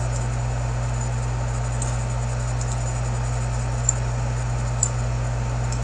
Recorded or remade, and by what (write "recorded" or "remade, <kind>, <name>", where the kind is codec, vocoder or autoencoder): recorded